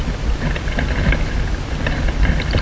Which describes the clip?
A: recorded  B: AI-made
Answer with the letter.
A